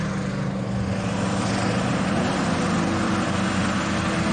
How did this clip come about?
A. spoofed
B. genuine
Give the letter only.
B